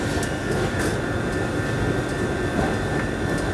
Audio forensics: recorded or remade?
recorded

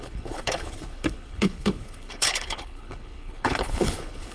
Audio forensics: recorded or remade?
remade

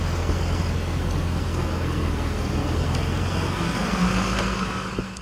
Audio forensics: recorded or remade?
remade